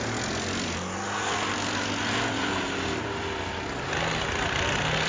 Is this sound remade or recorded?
recorded